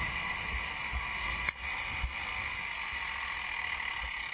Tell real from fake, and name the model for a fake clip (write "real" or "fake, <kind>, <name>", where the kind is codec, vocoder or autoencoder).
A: real